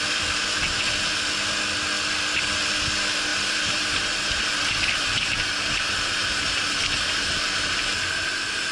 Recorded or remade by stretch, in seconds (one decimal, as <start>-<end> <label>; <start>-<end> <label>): 0.0-3.3 recorded; 3.3-7.8 remade; 7.8-8.7 recorded